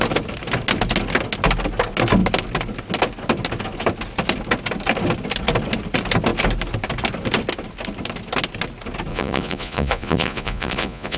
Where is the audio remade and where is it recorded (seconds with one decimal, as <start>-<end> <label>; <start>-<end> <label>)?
0.0-9.1 recorded; 9.1-11.2 remade